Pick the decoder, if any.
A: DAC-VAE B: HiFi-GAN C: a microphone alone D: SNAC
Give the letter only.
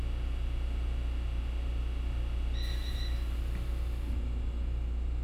C